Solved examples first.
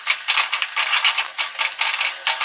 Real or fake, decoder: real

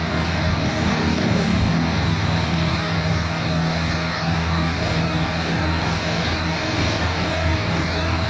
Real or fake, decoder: fake, codec, DAC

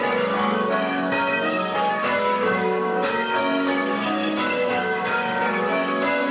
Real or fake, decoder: fake, codec, DAC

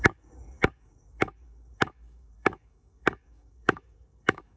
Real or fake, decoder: fake, codec, DAC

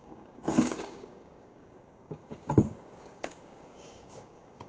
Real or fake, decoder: fake, codec, DAC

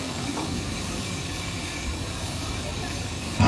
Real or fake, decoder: fake, codec, DAC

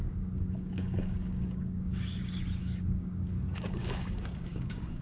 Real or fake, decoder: fake, codec, DAC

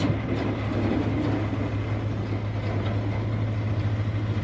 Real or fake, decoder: real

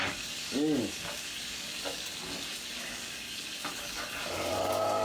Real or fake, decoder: fake, codec, DAC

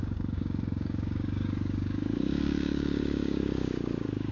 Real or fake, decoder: fake, codec, DAC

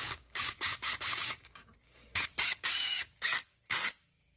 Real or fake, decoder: fake, codec, DAC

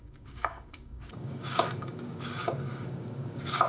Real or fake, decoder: fake, codec, DAC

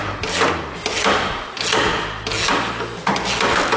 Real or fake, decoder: real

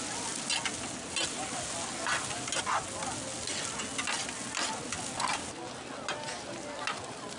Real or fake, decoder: real